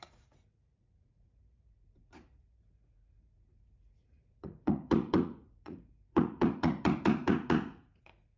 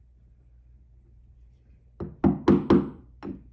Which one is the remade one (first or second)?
first